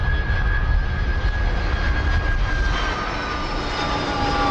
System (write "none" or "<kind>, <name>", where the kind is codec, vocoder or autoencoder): none